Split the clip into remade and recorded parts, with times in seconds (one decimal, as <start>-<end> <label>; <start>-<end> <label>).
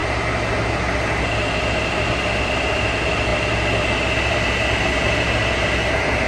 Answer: 0.0-6.3 recorded